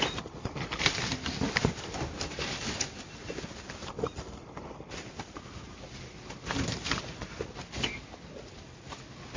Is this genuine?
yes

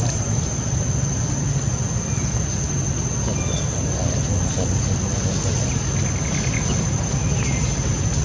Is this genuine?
yes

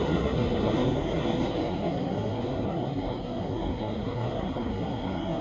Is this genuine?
no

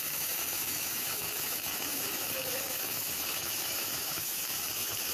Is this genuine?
no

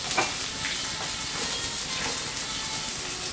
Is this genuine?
yes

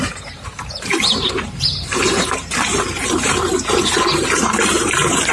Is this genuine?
no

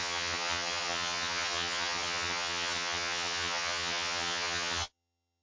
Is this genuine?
no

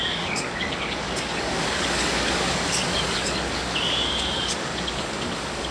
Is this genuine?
no